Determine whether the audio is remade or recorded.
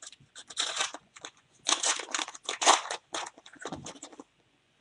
remade